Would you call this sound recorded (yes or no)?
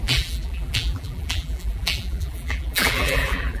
no